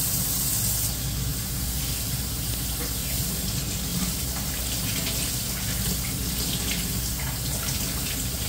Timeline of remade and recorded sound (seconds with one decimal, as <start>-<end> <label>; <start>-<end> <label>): 0.0-1.3 recorded; 1.3-2.3 remade; 2.3-3.0 recorded; 3.0-3.5 remade; 3.5-3.9 recorded; 3.9-4.5 remade; 4.5-7.1 recorded; 7.1-8.5 remade